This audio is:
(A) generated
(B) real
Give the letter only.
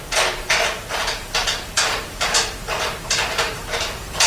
A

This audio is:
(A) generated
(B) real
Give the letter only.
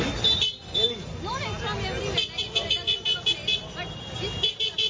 B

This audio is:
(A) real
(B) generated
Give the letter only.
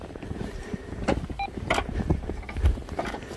A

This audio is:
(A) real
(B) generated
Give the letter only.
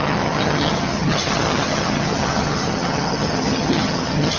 B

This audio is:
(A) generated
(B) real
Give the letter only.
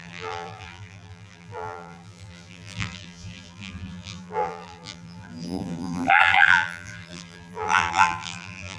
A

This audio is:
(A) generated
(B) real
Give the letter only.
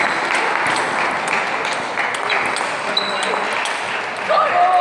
B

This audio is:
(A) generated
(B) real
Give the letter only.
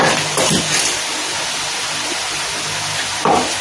B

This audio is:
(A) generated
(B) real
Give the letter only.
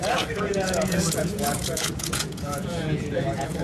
A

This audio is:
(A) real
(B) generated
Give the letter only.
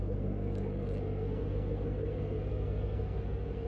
B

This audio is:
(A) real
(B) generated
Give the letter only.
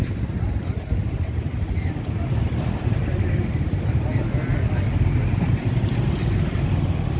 A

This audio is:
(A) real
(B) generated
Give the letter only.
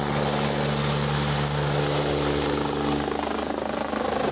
A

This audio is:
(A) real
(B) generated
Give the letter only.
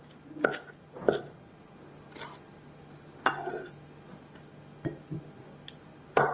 A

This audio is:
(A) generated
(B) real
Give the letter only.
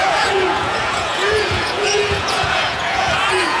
A